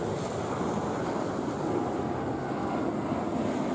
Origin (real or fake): real